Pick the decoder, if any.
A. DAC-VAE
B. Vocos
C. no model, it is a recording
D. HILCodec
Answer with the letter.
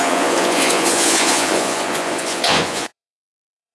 B